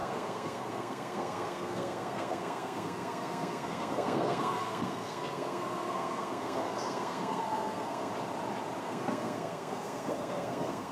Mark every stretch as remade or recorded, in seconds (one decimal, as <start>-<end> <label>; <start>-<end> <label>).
0.0-8.1 remade; 8.1-8.8 recorded; 8.8-10.9 remade